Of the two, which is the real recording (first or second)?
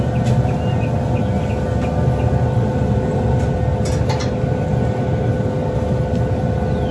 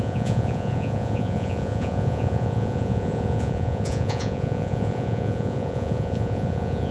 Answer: first